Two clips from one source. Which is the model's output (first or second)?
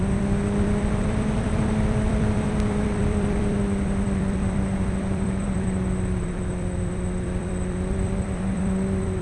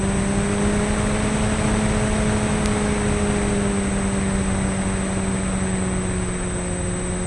first